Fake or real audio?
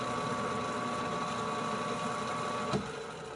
real